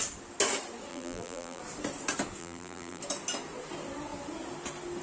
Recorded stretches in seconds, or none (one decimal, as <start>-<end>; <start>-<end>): 0.0-0.9; 1.6-2.4; 3.0-5.0